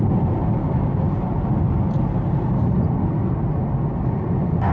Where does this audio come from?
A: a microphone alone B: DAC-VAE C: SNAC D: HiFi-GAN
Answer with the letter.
A